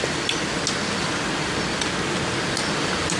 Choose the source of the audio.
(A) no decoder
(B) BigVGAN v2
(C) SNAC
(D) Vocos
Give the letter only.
A